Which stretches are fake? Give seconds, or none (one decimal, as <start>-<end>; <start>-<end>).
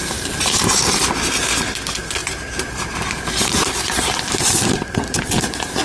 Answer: 0.0-0.8; 2.2-5.8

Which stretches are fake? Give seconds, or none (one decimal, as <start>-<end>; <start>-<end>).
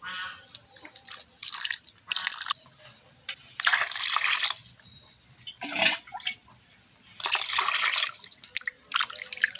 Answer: 1.4-5.8; 6.4-8.8